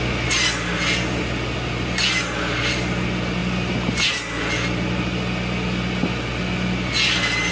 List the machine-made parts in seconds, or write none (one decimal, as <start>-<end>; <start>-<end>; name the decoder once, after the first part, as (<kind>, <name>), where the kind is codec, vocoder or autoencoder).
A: none